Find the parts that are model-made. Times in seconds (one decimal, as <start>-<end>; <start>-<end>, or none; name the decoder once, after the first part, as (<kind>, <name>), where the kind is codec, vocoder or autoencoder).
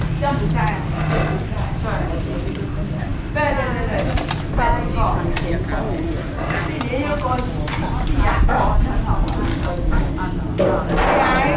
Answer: 9.5-10.1 (codec, DAC)